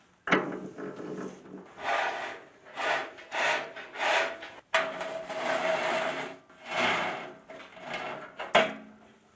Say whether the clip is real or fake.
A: real